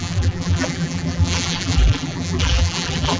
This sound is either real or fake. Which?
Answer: fake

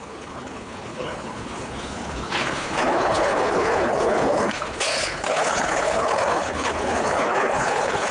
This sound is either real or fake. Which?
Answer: fake